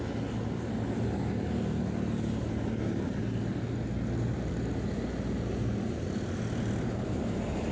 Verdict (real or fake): real